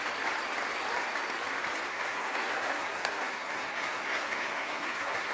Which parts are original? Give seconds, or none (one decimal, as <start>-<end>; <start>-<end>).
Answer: 0.0-1.9